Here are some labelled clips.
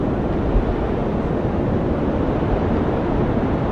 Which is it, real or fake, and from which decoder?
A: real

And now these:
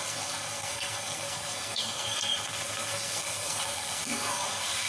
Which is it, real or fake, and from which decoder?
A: fake, codec, SNAC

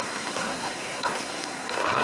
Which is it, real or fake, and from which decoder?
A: fake, codec, SNAC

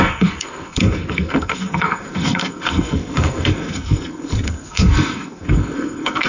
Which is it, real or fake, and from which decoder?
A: fake, codec, SNAC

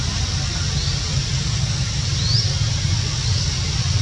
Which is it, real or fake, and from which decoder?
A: real